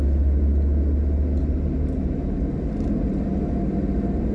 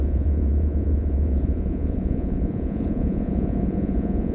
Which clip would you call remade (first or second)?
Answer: second